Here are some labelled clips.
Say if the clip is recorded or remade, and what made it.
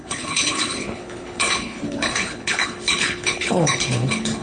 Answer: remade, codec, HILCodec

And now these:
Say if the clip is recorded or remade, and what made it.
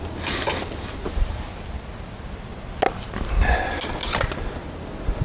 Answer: recorded